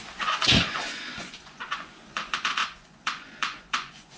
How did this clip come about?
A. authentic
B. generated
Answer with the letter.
B